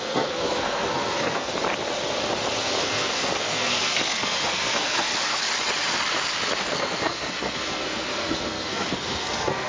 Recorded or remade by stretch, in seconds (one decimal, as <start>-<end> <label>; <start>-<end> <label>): 0.0-1.5 remade; 1.5-2.6 recorded; 2.6-5.1 remade; 5.1-6.6 recorded; 6.6-9.7 remade